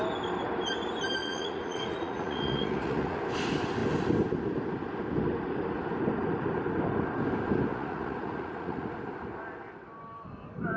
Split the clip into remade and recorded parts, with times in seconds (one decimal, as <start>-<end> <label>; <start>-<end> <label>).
0.0-1.2 recorded; 1.2-3.2 remade; 3.2-7.7 recorded; 7.7-8.9 remade; 8.9-10.8 recorded